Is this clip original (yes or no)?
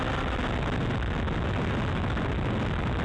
yes